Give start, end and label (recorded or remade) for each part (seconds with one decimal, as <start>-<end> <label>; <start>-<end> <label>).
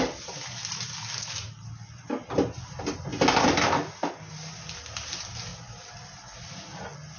0.0-7.2 recorded